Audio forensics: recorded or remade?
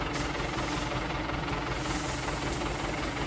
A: recorded